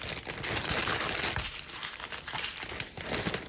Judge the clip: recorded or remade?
recorded